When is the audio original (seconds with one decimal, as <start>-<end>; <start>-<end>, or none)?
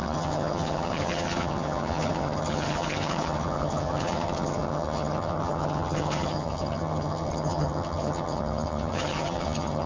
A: none